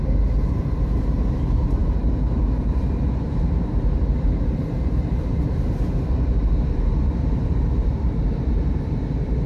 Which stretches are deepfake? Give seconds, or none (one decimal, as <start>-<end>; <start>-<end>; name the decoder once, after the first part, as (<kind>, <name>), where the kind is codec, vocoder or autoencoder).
0.0-9.5 (vocoder, BigVGAN v2)